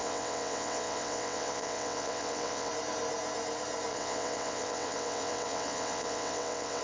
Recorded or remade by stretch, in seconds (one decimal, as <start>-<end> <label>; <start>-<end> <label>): 0.0-2.7 remade; 2.7-3.9 recorded; 3.9-6.8 remade